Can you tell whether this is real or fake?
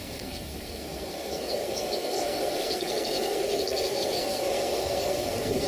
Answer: fake